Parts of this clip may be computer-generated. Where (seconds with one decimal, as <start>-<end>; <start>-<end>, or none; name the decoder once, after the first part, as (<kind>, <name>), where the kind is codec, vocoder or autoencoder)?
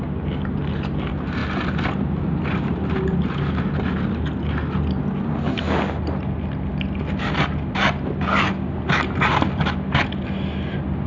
none